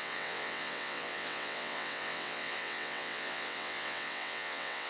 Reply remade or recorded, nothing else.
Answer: remade